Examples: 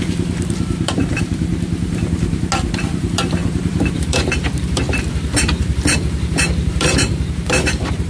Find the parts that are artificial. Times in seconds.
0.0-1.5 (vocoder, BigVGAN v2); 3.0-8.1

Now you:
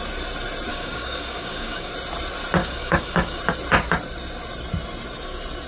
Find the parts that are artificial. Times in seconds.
0.7-1.9 (codec, DAC); 2.6-3.4